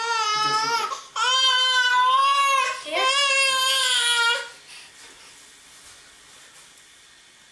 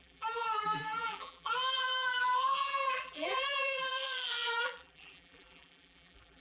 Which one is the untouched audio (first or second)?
first